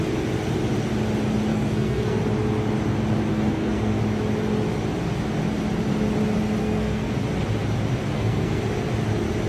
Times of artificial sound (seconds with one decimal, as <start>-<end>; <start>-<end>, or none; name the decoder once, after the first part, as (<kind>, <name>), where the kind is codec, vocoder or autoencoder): 1.5-2.2 (codec, SNAC); 3.3-4.0; 6.6-7.1; 8.1-8.6